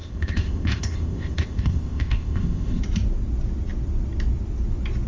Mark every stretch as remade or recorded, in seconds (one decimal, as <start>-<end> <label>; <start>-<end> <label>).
0.0-2.8 remade; 2.8-5.1 recorded